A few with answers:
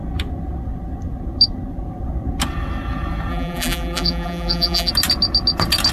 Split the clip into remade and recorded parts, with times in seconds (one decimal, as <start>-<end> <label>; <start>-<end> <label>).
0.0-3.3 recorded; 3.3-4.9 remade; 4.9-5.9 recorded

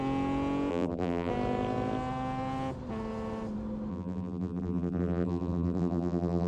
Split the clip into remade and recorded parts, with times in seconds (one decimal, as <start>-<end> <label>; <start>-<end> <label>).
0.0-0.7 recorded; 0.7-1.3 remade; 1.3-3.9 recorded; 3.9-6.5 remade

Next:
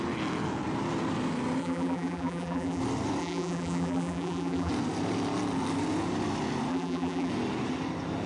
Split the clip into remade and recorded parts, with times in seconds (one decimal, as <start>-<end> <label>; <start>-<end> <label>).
0.0-1.6 recorded; 1.6-2.8 remade; 2.8-3.2 recorded; 3.2-4.7 remade; 4.7-6.7 recorded; 6.7-7.3 remade; 7.3-8.3 recorded